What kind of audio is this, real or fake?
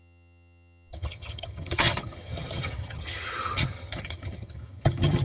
fake